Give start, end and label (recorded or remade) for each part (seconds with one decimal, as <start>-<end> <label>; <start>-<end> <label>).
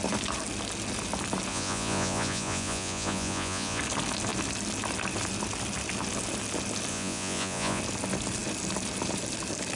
0.0-1.5 recorded; 1.5-3.8 remade; 3.8-6.9 recorded; 6.9-7.8 remade; 7.8-9.8 recorded